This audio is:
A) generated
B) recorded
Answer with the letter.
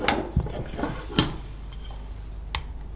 B